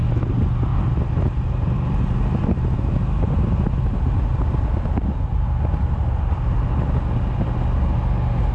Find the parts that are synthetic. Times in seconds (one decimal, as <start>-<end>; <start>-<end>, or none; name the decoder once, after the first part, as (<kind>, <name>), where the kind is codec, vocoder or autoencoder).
none